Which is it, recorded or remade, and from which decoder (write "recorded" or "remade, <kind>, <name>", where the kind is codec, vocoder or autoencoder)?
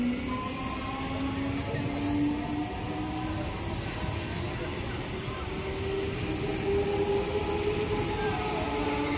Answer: recorded